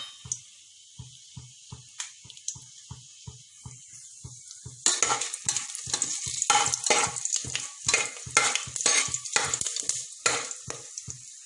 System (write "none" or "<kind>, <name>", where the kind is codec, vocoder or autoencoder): none